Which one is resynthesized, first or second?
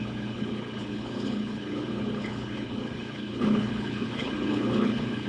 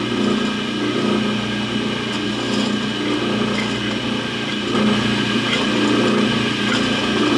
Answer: first